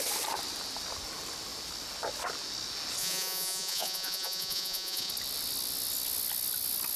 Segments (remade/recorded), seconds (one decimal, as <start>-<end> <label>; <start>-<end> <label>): 0.0-3.0 recorded; 3.0-5.1 remade; 5.1-7.0 recorded